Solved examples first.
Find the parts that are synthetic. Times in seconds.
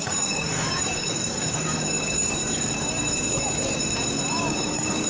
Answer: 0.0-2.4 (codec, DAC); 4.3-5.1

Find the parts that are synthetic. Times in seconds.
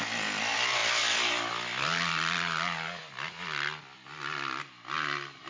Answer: none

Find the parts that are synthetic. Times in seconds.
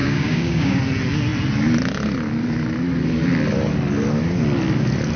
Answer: 0.0-0.8 (codec, DAC)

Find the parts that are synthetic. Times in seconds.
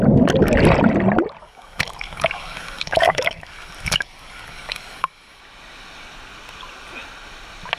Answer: 1.4-5.4 (codec, DAC)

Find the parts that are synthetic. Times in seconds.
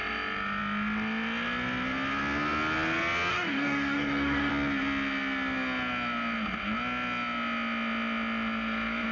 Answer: 3.3-4.5 (codec, DAC)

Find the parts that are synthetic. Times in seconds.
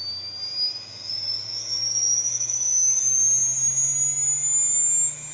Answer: 0.9-3.0 (codec, DAC)